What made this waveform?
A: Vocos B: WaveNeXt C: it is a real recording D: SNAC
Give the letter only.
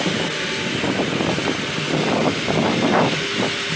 C